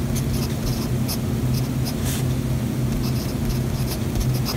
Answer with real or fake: real